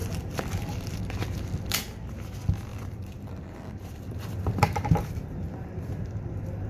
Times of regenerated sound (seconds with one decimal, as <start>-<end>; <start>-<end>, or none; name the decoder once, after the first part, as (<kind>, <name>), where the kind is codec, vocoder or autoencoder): 0.0-1.0 (vocoder, BigVGAN v2); 2.7-6.3